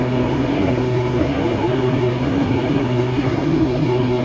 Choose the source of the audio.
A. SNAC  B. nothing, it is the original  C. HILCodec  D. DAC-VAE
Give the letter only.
A